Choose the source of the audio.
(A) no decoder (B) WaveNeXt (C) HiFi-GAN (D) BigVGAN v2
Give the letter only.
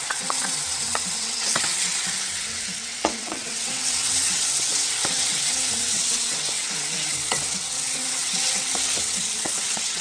B